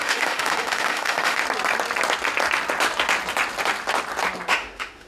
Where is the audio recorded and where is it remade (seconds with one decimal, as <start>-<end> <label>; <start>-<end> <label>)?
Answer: 0.0-1.4 remade; 1.4-4.5 recorded; 4.5-5.1 remade